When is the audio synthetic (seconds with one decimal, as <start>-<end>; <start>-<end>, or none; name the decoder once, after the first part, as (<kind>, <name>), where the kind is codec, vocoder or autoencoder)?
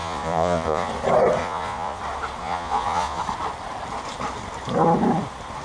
0.0-0.9 (vocoder, Vocos); 1.4-2.0; 2.4-3.2